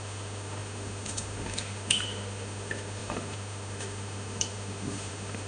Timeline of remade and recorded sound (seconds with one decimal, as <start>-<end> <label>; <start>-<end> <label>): 0.0-5.5 remade